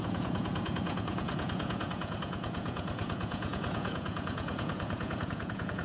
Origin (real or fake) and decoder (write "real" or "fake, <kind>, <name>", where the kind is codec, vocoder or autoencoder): fake, vocoder, Vocos